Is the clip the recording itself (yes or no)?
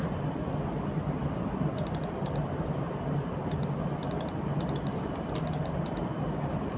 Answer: yes